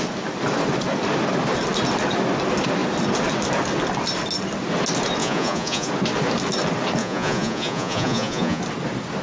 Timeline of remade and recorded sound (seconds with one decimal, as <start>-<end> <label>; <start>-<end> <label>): 0.0-5.2 recorded; 5.2-5.9 remade; 5.9-7.0 recorded; 7.0-8.6 remade; 8.6-9.2 recorded